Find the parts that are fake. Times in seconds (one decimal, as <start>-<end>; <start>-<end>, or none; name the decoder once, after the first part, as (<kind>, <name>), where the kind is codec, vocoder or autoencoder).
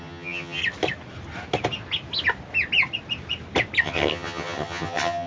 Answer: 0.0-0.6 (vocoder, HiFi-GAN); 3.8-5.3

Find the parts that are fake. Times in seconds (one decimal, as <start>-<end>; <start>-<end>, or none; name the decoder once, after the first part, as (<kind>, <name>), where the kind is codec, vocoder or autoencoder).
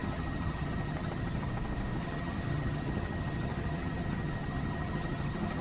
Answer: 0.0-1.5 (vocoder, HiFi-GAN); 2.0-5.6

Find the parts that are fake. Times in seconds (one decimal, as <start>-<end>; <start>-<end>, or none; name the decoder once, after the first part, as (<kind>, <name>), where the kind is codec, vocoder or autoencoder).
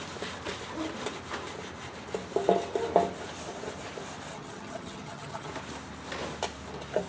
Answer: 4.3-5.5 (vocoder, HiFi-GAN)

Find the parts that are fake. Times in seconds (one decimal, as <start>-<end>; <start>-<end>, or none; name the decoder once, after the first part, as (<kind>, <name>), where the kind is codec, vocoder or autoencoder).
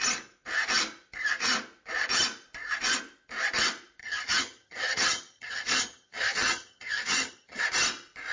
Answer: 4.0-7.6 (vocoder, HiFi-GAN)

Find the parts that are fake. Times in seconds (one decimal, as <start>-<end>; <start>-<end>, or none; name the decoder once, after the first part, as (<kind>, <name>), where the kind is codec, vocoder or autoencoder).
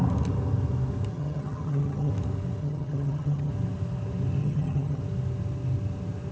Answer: 1.1-2.1 (vocoder, HiFi-GAN); 2.6-3.5; 4.4-5.0